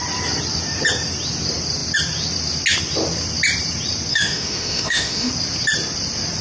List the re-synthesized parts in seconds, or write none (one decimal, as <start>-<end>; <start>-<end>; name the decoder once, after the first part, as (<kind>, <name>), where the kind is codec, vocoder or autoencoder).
4.1-5.3 (autoencoder, DAC-VAE)